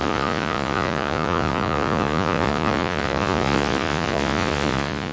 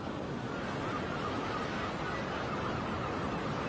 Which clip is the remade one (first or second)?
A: first